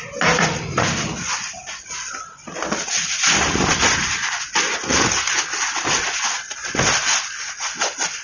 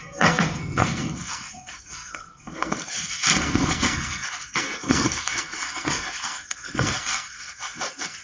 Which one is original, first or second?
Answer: first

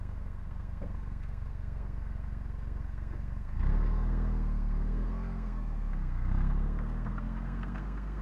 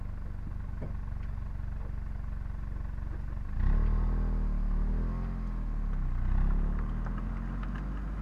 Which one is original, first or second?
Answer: second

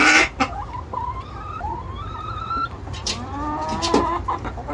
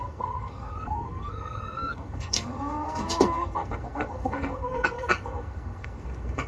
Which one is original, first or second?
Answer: first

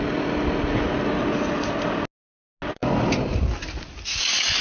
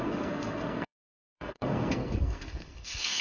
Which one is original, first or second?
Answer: first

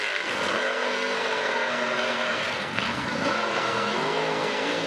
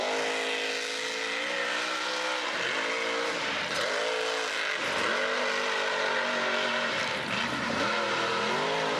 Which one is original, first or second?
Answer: second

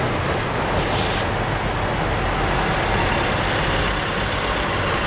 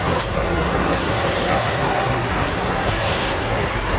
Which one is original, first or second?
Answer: first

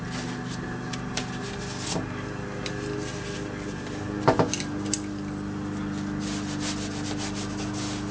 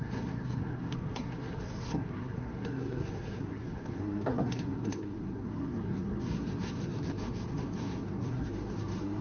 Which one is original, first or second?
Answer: first